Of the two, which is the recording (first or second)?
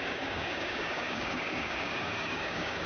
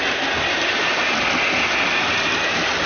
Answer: second